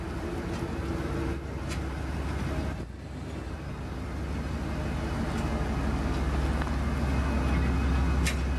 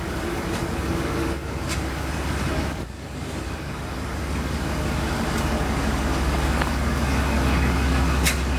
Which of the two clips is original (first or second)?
first